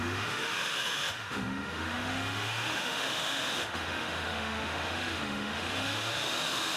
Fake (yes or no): yes